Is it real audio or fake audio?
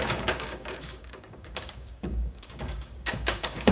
fake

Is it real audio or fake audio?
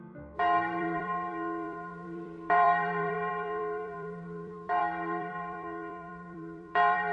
fake